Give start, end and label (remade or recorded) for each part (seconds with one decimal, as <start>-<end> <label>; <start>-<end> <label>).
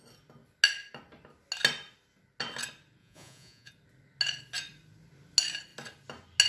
0.0-3.0 recorded; 3.0-3.7 remade; 3.7-6.5 recorded